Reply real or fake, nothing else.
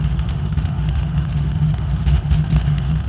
fake